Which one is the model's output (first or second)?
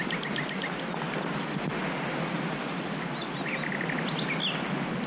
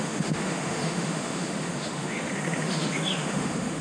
second